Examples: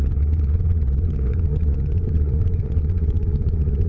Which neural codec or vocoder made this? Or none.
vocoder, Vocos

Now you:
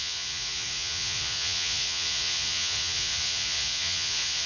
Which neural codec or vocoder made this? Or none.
vocoder, Vocos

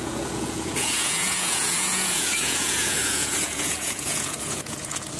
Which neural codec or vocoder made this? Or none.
vocoder, Vocos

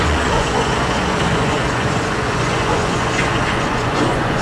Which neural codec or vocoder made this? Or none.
vocoder, Vocos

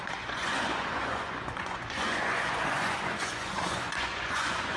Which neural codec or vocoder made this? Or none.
vocoder, Vocos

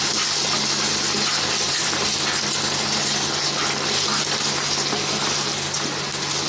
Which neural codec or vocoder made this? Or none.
none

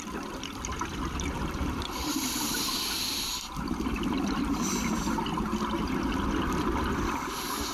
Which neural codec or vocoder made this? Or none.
none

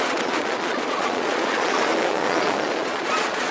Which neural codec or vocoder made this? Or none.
vocoder, Vocos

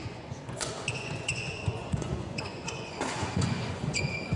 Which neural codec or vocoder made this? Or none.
vocoder, Vocos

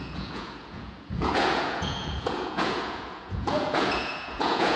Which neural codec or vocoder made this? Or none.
vocoder, Vocos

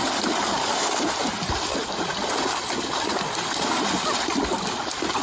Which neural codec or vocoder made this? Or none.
none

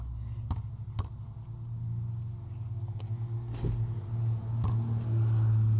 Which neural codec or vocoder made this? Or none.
none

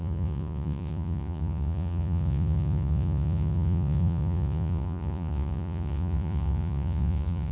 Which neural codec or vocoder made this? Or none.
vocoder, Vocos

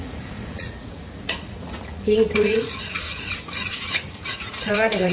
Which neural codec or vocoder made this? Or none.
vocoder, Vocos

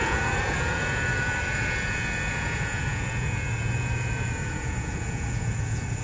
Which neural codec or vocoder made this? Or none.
vocoder, Vocos